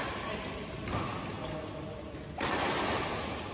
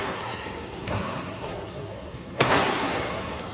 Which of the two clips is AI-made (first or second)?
second